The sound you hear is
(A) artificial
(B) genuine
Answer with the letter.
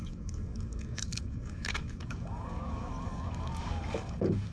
A